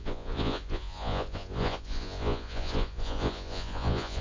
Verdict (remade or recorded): remade